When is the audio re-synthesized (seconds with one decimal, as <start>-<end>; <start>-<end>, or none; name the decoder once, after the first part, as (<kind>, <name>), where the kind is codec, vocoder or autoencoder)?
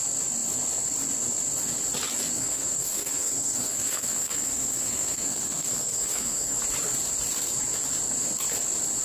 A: 2.4-6.6 (codec, SNAC)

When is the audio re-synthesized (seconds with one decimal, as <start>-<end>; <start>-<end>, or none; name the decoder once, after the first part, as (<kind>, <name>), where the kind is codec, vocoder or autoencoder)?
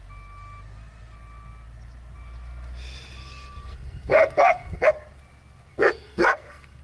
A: 3.2-4.9 (codec, SNAC); 5.7-6.8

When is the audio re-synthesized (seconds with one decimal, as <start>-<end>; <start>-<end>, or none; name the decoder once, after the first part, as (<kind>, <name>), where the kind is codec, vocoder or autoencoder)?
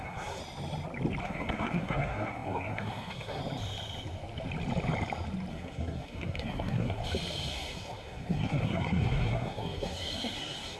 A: 0.0-0.4 (codec, SNAC); 1.2-3.4; 5.5-7.0; 7.5-10.8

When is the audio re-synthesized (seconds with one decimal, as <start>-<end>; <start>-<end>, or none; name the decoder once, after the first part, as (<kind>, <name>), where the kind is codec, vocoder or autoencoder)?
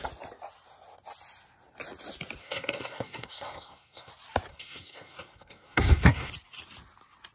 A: 2.4-4.1 (codec, SNAC); 4.5-6.3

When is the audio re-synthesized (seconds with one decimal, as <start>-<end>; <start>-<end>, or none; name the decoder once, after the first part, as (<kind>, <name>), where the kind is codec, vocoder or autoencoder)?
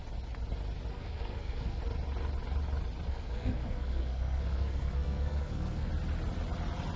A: 0.9-1.8 (codec, SNAC); 3.1-5.9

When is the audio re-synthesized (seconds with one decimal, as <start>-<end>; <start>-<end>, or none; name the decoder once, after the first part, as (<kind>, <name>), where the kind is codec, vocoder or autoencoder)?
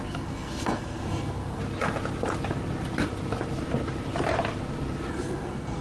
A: 0.0-1.6 (codec, SNAC); 5.1-5.8